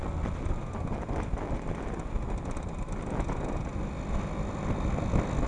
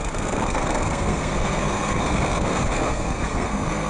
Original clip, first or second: first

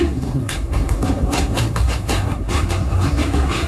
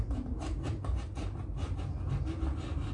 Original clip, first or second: second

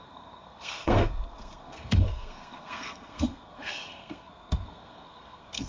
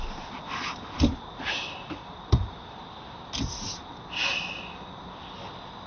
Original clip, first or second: second